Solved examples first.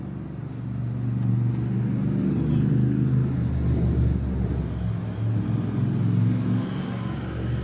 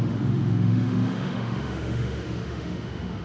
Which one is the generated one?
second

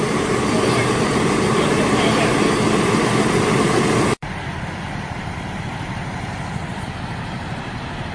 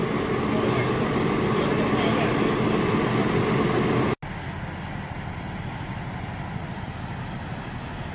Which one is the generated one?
first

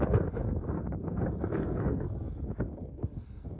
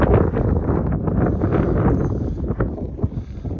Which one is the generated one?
first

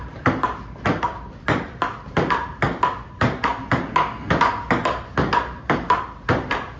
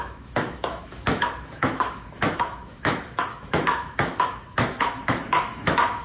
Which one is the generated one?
second